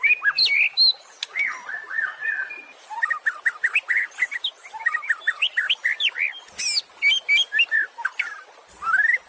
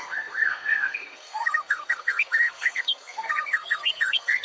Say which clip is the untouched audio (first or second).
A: first